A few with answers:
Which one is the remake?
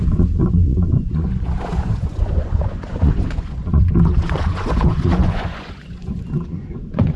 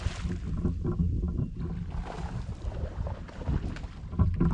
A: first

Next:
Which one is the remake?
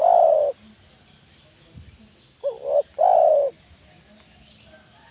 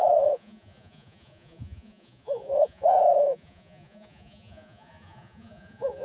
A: second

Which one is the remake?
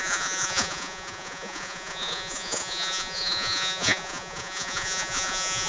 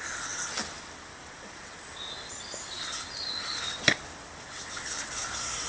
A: first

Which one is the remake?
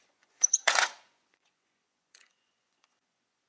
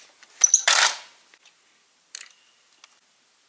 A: first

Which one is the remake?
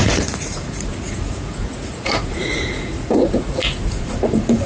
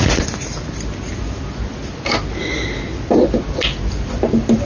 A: first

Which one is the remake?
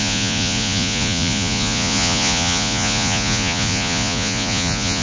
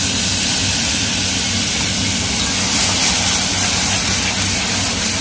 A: first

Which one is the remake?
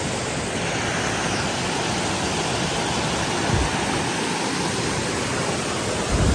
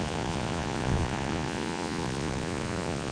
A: second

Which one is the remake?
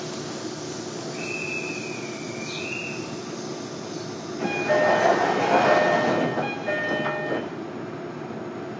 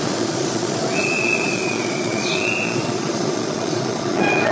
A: second